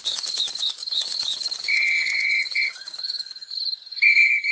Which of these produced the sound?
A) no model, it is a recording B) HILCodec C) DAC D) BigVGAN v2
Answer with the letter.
C